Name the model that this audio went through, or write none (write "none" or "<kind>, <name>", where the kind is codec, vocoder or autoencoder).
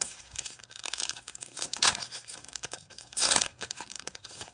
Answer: codec, SNAC